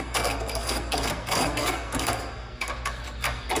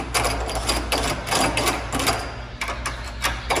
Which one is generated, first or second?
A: first